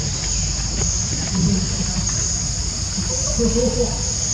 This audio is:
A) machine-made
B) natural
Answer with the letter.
B